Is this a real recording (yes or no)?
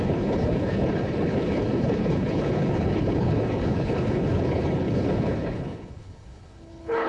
no